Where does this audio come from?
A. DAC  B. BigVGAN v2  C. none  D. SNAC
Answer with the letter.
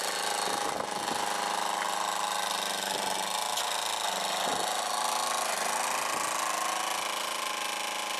C